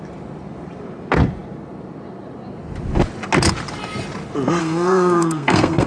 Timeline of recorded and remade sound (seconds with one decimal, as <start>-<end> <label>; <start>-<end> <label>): 0.0-4.6 recorded; 4.6-5.9 remade